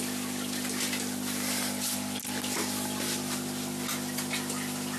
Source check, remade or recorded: recorded